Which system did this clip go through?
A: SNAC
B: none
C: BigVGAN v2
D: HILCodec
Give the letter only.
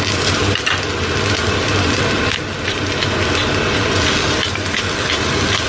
B